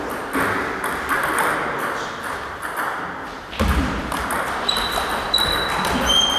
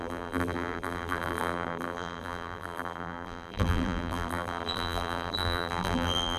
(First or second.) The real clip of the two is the first